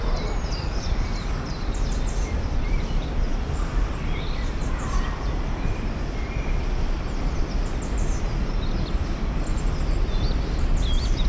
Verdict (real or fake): fake